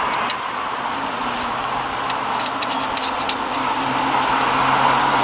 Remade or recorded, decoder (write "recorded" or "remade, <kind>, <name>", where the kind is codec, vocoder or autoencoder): recorded